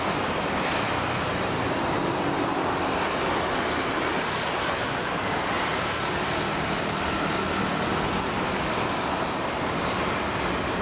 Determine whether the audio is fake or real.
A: real